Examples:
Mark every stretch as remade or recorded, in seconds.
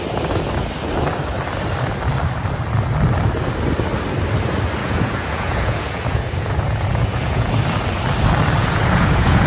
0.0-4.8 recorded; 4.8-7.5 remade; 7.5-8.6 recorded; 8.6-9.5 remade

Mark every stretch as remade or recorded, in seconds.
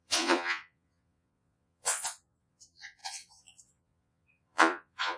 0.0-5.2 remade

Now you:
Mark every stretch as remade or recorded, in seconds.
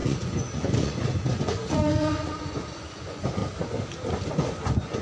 0.0-3.4 remade; 3.4-4.3 recorded; 4.3-5.0 remade